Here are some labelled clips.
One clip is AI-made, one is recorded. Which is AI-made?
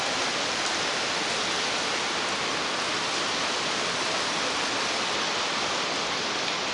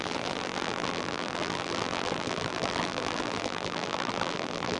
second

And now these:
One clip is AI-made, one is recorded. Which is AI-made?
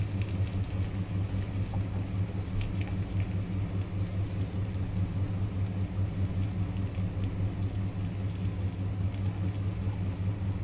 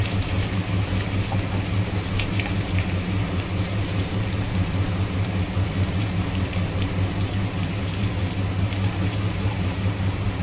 second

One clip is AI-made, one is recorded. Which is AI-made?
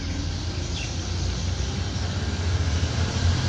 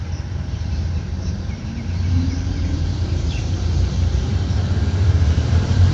second